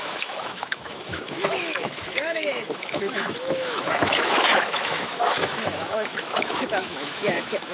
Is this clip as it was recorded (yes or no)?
no